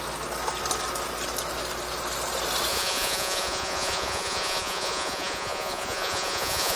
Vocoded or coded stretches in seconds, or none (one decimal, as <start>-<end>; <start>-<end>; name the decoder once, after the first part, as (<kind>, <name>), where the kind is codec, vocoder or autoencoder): 2.7-6.8 (vocoder, Vocos)